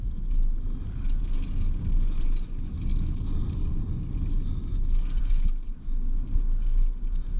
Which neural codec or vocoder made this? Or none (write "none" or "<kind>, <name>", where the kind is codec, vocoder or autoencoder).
none